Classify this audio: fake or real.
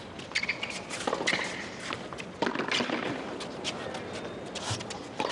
real